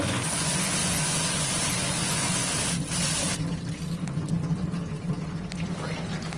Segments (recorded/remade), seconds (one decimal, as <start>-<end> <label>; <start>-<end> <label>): 0.0-2.4 remade; 2.4-6.4 recorded